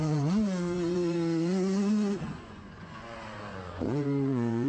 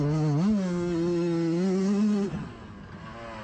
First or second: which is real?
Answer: second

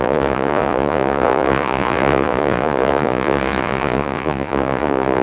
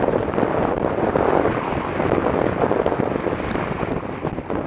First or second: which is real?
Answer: second